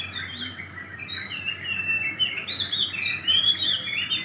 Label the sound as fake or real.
real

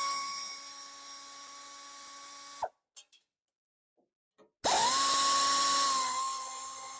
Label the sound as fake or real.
real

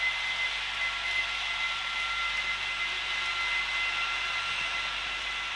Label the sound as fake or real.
real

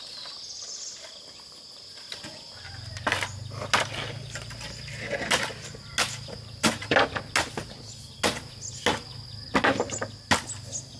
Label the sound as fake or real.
real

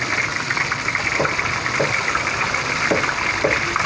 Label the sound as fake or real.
real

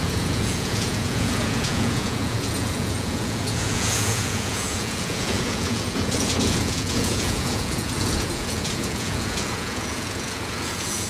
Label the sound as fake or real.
fake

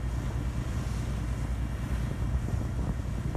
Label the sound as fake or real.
real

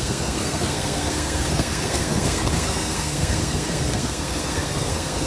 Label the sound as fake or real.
fake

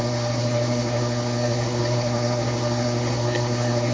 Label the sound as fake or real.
fake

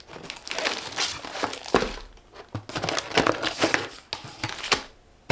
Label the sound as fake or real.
real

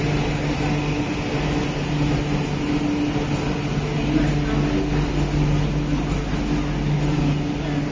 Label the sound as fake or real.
real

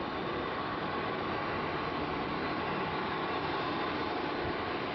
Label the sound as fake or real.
real